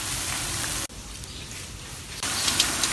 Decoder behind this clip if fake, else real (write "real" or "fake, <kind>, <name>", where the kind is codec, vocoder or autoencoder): real